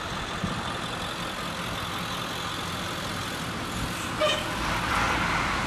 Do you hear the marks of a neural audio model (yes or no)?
no